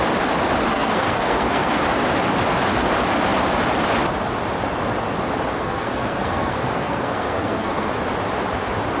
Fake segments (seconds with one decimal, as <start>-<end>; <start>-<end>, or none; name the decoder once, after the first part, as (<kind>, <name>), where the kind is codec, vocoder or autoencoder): 0.7-1.8 (codec, SNAC); 5.5-8.0